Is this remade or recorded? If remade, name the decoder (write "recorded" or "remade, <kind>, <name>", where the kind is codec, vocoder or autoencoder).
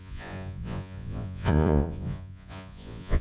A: remade, vocoder, Vocos